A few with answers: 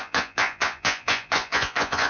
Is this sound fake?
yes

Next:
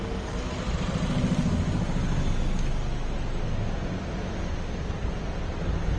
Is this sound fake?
no